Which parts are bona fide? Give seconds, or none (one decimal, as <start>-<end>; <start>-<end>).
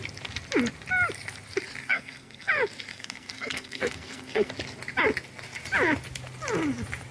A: 0.0-1.8; 2.5-2.9; 4.5-7.1